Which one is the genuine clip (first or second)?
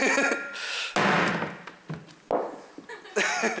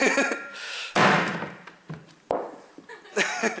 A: first